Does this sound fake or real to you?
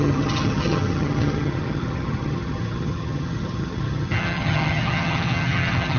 fake